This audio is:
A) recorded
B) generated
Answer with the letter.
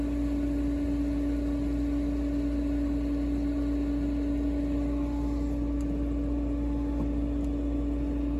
A